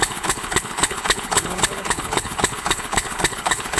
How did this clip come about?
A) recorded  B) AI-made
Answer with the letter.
B